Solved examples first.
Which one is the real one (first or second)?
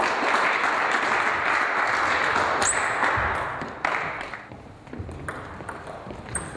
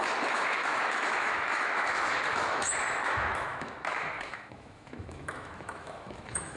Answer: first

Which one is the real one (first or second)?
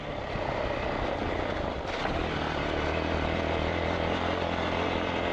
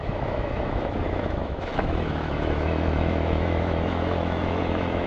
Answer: first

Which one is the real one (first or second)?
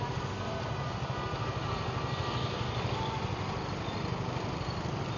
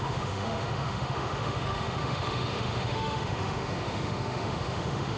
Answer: first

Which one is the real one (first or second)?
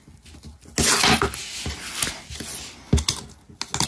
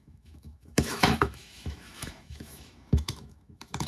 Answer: first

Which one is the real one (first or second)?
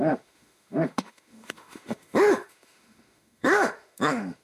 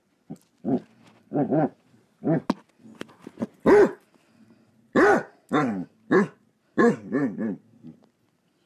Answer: second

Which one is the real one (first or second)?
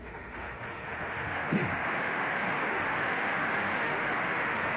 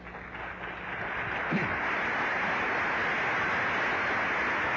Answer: second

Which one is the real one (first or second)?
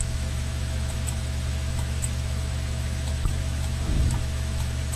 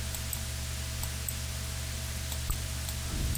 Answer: second